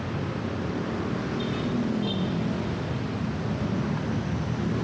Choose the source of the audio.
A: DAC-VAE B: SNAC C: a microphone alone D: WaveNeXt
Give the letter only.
C